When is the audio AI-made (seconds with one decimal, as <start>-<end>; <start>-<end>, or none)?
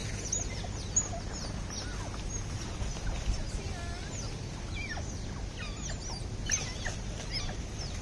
none